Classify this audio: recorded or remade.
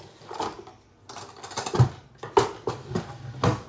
recorded